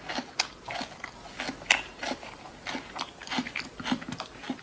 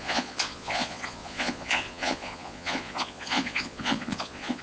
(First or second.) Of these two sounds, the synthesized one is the second